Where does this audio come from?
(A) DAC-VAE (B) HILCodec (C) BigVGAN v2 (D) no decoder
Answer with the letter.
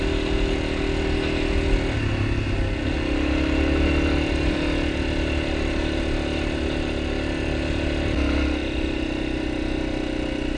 D